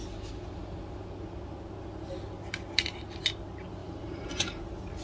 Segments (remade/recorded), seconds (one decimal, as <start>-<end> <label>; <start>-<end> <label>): 0.0-3.8 recorded; 3.8-4.3 remade; 4.3-5.0 recorded